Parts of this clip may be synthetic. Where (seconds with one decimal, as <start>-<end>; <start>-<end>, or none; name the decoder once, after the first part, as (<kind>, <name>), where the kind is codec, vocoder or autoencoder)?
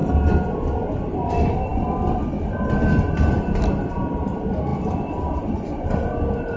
none